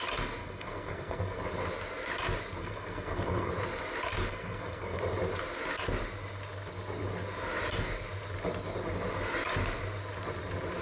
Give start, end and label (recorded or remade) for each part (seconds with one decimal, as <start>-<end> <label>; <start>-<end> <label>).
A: 0.0-0.4 recorded; 0.4-1.4 remade; 1.4-2.6 recorded; 2.6-3.5 remade; 3.5-4.3 recorded; 4.3-5.0 remade; 5.0-10.8 recorded